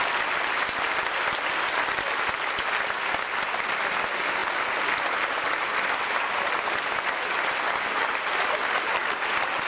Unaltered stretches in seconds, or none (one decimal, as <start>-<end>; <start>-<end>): 0.0-9.7